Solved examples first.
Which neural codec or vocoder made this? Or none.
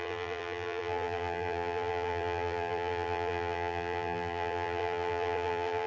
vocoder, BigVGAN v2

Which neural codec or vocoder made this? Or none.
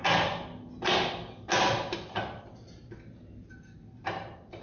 none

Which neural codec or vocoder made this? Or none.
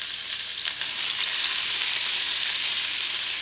vocoder, BigVGAN v2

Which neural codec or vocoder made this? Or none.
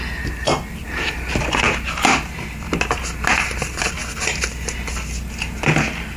none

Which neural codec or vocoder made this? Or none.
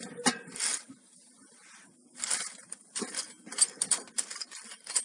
none